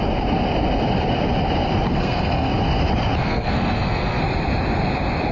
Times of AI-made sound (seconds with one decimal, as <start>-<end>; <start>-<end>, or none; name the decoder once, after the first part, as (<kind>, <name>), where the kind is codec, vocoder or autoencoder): 1.9-2.5 (codec, SNAC); 3.2-4.2